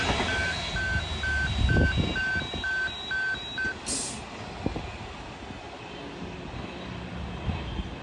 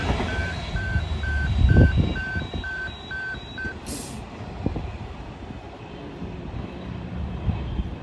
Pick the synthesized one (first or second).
second